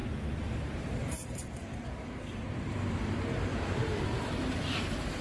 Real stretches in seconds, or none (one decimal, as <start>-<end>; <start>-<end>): 3.1-3.5; 4.3-5.2